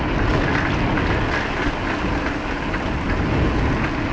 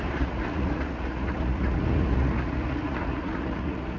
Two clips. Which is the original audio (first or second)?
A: first